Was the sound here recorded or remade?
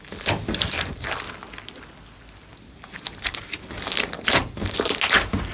recorded